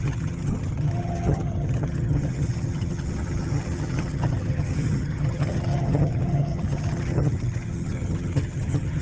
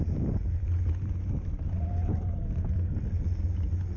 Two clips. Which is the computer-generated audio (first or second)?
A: first